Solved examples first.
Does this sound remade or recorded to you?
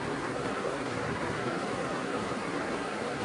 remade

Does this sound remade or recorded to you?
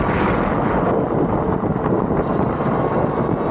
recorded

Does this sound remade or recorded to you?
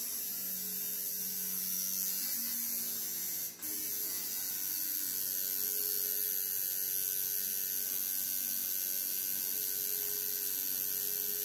recorded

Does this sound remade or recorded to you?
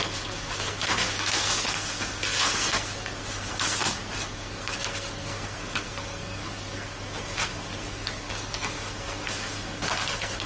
remade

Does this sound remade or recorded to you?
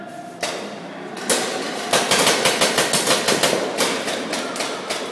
recorded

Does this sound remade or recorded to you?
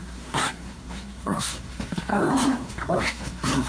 remade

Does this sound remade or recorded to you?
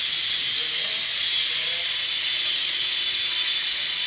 recorded